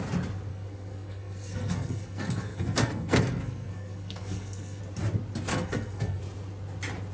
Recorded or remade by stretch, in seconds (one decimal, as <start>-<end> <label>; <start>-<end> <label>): 0.0-0.5 recorded; 0.5-4.8 remade; 4.8-5.5 recorded; 5.5-6.2 remade; 6.2-7.1 recorded